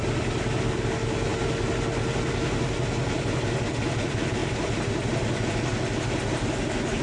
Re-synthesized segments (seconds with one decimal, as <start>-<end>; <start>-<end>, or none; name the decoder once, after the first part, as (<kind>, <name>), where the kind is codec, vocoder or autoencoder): none